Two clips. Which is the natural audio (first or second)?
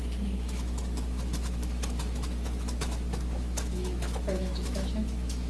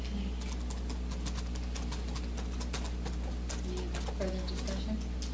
second